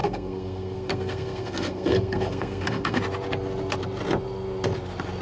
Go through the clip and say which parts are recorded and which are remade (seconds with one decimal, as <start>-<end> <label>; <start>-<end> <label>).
0.0-3.0 remade; 3.0-5.2 recorded